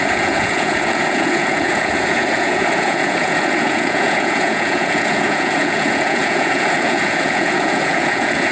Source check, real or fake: fake